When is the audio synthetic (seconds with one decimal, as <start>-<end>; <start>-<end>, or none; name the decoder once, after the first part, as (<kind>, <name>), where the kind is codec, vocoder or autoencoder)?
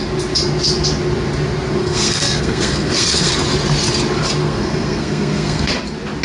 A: 1.8-3.3 (codec, SNAC); 4.4-5.7